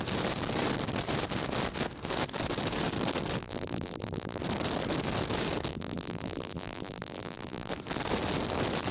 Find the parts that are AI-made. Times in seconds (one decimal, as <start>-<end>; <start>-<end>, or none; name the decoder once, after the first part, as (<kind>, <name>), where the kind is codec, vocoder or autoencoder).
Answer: 3.4-4.4 (vocoder, BigVGAN v2); 5.7-7.7